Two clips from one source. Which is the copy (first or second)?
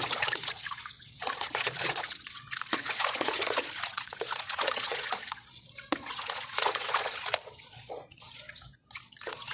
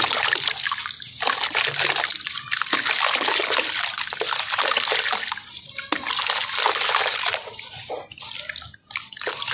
first